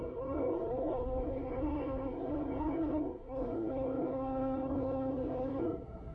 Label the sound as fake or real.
fake